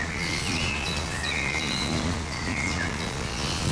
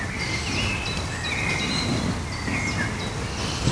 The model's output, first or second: first